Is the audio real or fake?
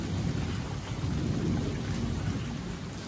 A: real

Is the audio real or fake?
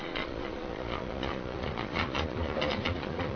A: fake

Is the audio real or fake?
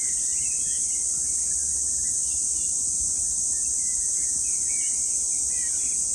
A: real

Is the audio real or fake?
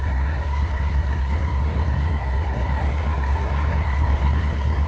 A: fake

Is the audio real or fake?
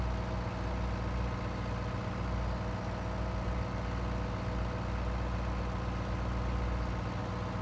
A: real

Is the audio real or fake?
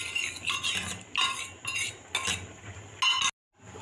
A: real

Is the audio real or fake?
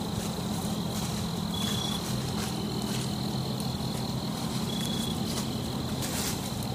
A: real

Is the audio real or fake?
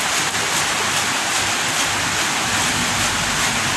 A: real